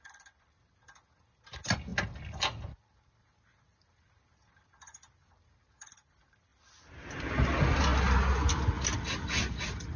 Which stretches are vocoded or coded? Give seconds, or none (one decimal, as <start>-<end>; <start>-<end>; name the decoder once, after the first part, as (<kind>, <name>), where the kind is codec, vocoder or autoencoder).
none